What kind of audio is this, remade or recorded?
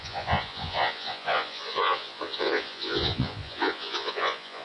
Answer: remade